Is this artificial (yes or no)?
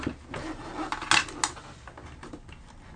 no